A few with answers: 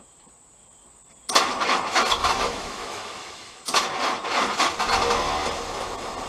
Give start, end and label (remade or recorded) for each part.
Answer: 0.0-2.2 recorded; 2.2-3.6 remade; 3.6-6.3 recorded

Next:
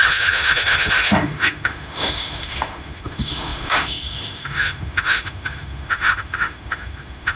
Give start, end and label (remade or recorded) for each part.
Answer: 0.0-7.4 remade